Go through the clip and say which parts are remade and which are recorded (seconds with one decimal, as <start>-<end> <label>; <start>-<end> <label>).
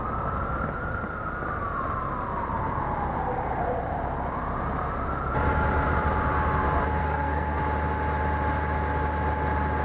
0.0-7.0 recorded; 7.0-7.6 remade; 7.6-9.8 recorded